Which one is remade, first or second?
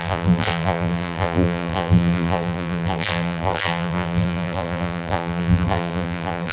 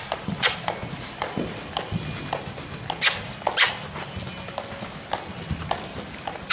first